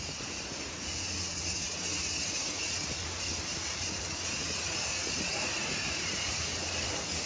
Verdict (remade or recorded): remade